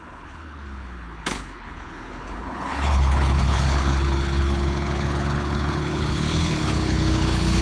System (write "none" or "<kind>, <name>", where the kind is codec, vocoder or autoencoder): codec, HILCodec